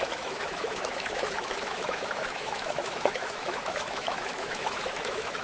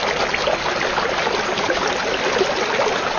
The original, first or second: second